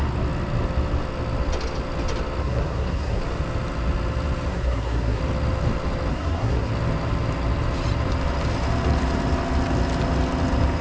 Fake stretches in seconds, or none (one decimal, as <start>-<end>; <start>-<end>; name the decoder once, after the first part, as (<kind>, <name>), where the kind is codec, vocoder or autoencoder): 2.4-3.2 (codec, SNAC); 4.5-5.2; 6.1-6.7